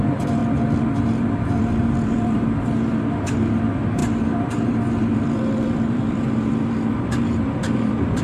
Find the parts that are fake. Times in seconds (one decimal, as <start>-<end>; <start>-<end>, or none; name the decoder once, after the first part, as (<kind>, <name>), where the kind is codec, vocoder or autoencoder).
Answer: 0.0-0.4 (vocoder, BigVGAN v2); 1.0-8.2